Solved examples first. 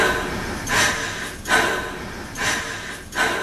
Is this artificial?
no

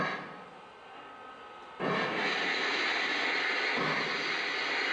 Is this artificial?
no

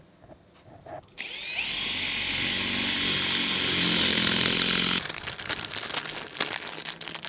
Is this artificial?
no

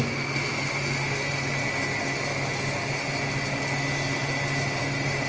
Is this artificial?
no